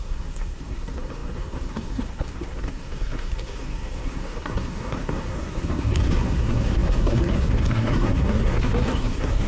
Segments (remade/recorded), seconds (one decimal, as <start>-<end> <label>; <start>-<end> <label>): 0.0-9.5 remade